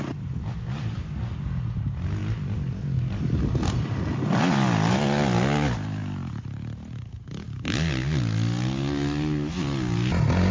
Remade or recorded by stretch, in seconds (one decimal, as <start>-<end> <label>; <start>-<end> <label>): 0.0-10.5 recorded